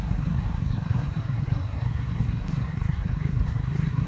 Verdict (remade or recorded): remade